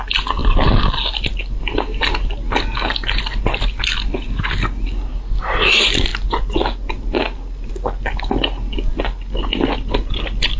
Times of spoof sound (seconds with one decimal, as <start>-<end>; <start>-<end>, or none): none